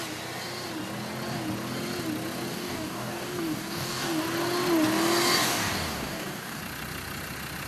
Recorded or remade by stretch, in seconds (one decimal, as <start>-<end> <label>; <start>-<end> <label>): 0.0-2.5 recorded; 2.5-4.2 remade; 4.2-5.4 recorded; 5.4-6.6 remade; 6.6-7.7 recorded